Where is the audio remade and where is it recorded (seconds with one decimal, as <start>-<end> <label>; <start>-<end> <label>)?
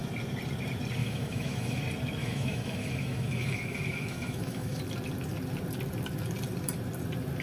0.0-1.0 recorded; 1.0-1.8 remade; 1.8-2.2 recorded; 2.2-4.8 remade; 4.8-7.4 recorded